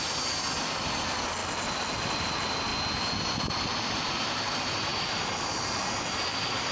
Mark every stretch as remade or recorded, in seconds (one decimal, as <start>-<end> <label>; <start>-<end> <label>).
0.0-4.9 recorded; 4.9-5.8 remade; 5.8-6.7 recorded